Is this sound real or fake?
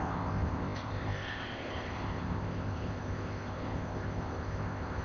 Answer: fake